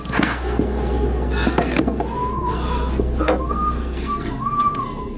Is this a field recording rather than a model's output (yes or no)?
no